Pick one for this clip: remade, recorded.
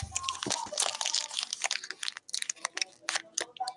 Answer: recorded